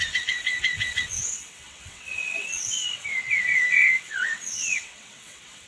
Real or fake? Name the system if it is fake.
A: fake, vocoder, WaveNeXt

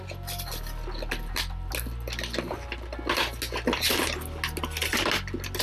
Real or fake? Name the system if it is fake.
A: real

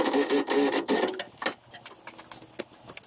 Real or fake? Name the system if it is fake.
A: real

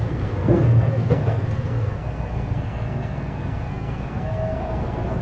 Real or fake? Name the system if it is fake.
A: fake, codec, SNAC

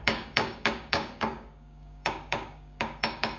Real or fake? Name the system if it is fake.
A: fake, codec, DAC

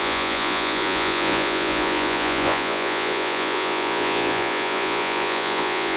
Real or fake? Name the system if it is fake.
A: fake, vocoder, Vocos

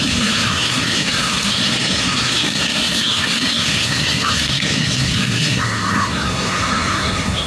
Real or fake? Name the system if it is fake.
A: fake, codec, SNAC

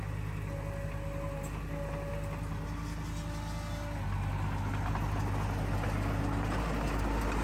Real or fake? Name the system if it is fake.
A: real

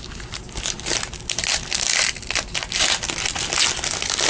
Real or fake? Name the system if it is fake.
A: real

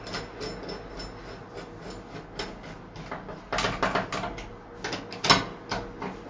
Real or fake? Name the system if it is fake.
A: real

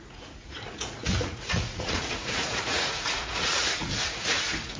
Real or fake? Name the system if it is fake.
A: fake, vocoder, Vocos